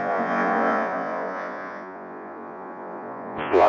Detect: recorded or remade remade